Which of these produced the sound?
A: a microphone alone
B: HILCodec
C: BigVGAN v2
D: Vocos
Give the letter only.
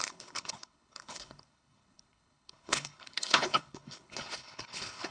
B